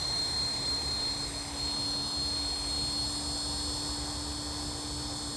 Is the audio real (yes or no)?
yes